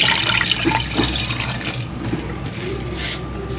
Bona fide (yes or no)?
yes